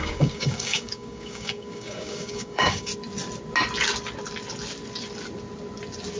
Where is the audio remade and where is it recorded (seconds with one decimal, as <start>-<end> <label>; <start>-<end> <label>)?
0.0-2.9 remade; 2.9-6.2 recorded